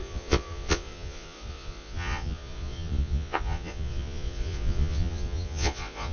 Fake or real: fake